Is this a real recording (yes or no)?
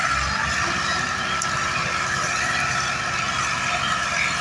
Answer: yes